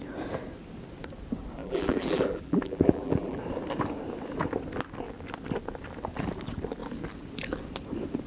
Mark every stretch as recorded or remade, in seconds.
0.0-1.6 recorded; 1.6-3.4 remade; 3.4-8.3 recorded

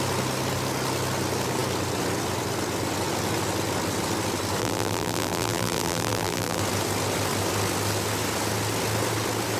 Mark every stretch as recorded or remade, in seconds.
0.0-4.6 recorded; 4.6-6.6 remade; 6.6-9.6 recorded